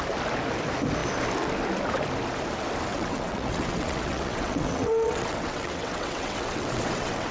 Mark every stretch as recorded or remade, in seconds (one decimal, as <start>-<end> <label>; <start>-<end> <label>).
0.0-2.9 recorded; 2.9-7.3 remade